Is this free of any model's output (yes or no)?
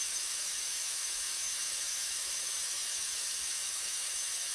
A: no